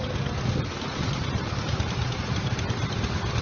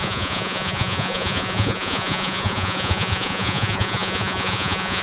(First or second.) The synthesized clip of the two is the second